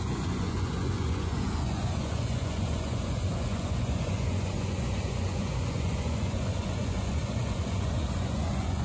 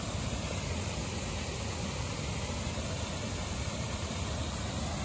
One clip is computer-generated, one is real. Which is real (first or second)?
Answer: second